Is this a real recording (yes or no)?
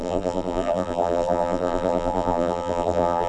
no